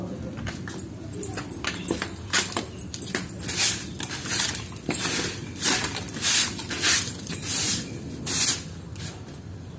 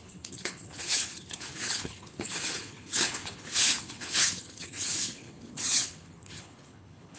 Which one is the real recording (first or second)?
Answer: first